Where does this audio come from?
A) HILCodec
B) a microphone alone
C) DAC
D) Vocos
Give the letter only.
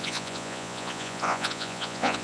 D